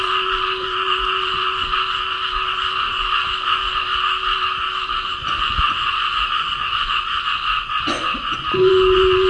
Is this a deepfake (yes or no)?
yes